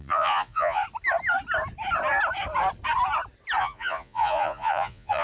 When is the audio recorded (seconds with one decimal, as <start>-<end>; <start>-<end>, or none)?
0.8-3.6